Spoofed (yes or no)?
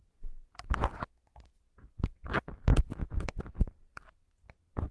no